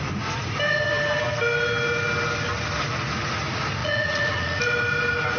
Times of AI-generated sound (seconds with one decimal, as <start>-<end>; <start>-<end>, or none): 3.8-4.6